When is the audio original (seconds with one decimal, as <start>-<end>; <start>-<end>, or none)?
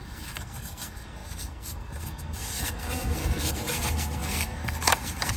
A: none